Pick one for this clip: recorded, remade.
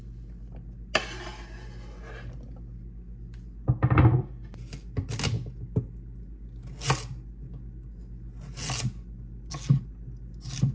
recorded